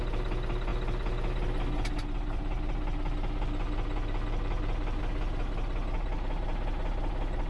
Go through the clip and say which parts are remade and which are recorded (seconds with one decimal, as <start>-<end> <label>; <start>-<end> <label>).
0.0-7.5 recorded